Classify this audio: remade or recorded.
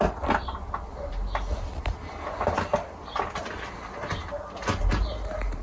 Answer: recorded